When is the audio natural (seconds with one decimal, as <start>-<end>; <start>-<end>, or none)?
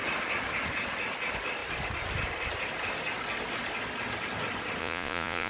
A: 0.0-4.8